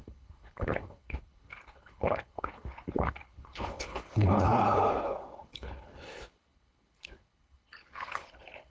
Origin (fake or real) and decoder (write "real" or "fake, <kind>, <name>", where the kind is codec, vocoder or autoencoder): fake, codec, HILCodec